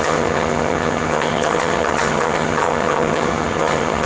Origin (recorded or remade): remade